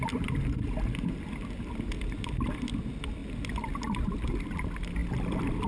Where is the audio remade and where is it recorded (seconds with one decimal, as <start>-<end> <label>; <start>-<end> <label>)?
0.0-5.7 recorded